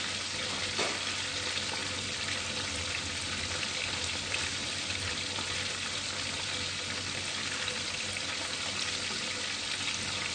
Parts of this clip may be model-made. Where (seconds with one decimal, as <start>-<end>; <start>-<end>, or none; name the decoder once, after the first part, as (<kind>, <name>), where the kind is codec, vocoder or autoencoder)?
1.8-2.5 (vocoder, BigVGAN v2)

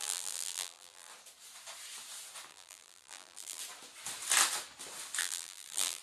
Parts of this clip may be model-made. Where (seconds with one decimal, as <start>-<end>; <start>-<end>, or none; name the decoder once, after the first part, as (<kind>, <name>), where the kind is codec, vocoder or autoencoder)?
0.0-1.1 (vocoder, BigVGAN v2); 2.5-3.6; 5.2-6.0

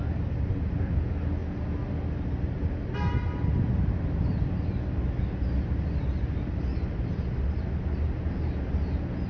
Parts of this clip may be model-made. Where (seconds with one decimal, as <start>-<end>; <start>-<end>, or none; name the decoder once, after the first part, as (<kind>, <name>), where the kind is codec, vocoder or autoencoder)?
none

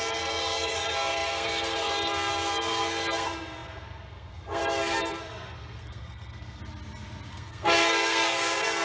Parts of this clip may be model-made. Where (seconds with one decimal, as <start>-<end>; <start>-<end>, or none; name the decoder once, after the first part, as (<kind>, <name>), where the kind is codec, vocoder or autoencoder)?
0.0-6.6 (codec, SNAC); 7.3-8.8

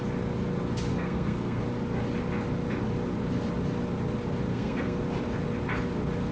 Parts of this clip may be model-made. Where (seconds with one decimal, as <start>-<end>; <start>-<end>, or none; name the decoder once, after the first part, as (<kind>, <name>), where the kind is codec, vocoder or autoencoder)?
0.9-1.6 (codec, SNAC); 4.5-5.0

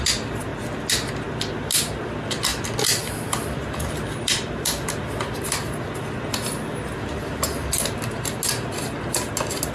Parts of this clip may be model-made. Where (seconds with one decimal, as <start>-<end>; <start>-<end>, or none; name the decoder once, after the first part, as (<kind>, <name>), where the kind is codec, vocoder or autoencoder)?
2.5-5.7 (vocoder, BigVGAN v2)